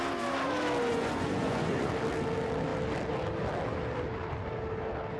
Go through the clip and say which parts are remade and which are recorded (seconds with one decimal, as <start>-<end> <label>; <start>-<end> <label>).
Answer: 0.0-0.9 recorded; 0.9-1.9 remade; 1.9-5.2 recorded